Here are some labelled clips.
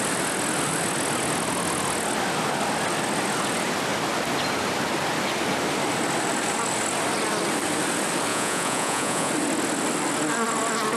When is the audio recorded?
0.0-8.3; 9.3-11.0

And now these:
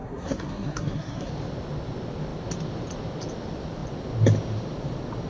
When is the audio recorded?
1.3-5.3

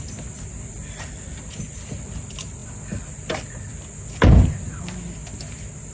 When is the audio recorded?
0.0-5.9

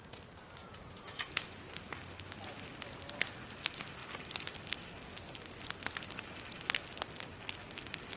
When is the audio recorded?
0.0-0.6; 1.4-8.2